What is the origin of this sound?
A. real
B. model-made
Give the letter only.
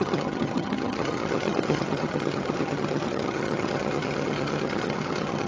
B